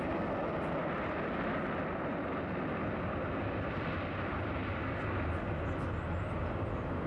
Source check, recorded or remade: recorded